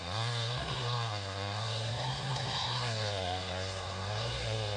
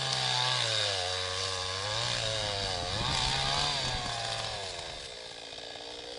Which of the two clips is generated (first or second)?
first